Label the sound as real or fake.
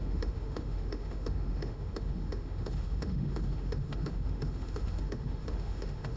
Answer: fake